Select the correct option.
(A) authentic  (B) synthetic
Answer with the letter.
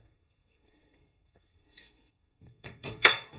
B